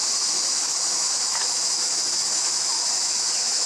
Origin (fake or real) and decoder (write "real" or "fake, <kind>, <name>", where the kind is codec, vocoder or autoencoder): fake, autoencoder, DAC-VAE